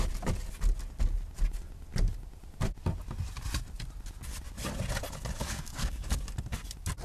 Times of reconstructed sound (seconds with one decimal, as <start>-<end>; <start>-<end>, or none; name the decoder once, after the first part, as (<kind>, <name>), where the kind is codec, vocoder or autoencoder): 5.4-6.2 (codec, DAC)